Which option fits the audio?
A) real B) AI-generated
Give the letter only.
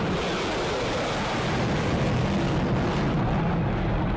A